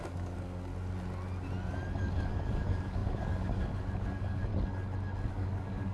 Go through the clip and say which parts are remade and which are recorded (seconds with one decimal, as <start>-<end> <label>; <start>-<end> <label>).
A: 0.0-0.7 remade; 0.7-2.0 recorded; 2.0-4.5 remade; 4.5-5.3 recorded; 5.3-5.9 remade